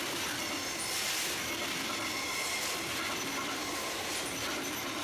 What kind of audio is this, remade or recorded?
recorded